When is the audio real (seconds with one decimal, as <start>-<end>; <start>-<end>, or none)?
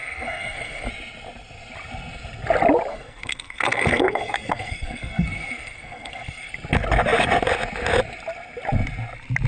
0.9-2.9; 6.5-9.5